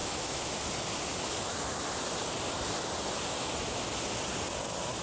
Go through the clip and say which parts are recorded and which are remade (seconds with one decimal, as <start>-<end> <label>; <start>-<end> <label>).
0.0-0.5 remade; 0.5-5.0 recorded